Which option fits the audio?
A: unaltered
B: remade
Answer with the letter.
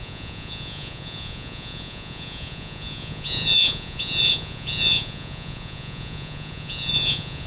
B